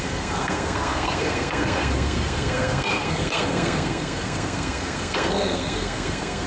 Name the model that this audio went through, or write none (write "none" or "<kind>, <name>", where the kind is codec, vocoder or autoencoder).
codec, SNAC